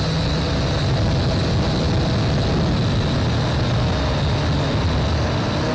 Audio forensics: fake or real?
real